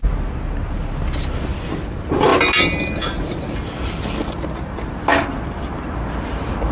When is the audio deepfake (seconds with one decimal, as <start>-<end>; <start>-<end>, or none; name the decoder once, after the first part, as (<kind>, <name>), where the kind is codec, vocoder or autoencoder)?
none